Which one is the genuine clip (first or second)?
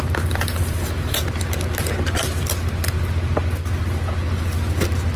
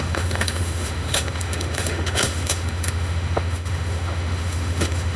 first